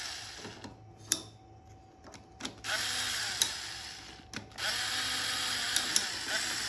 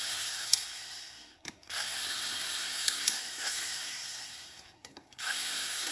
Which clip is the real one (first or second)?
first